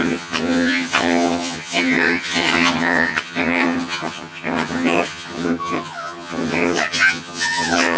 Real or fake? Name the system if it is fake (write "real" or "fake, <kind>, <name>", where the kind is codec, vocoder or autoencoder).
fake, vocoder, HiFi-GAN